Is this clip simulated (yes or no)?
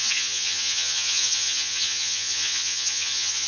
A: yes